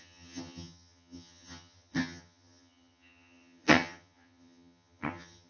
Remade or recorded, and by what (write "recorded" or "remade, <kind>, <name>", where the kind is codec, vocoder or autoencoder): remade, vocoder, HiFi-GAN